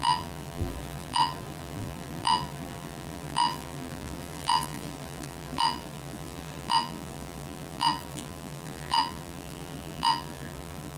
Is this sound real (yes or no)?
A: no